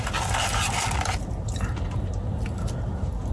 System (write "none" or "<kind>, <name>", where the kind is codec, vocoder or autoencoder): none